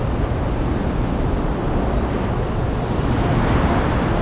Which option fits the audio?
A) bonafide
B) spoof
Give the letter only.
A